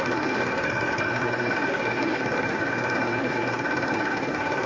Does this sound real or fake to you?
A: fake